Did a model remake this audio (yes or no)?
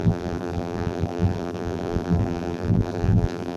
yes